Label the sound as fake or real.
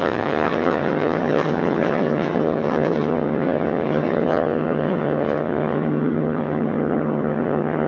fake